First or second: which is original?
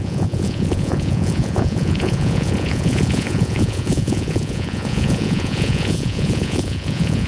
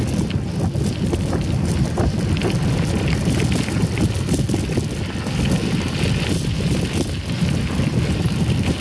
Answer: second